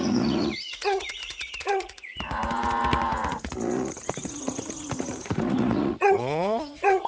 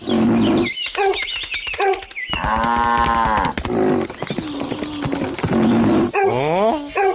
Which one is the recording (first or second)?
second